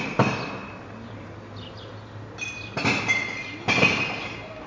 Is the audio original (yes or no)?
yes